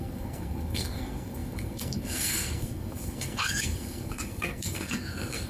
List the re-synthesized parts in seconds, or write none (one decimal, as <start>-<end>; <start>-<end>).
0.0-5.5